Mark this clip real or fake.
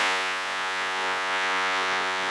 fake